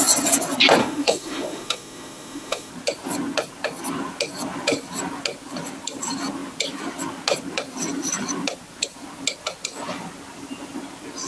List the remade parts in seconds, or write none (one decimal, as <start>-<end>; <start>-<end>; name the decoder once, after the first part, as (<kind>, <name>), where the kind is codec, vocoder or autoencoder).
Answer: 0.8-2.7 (autoencoder, DAC-VAE)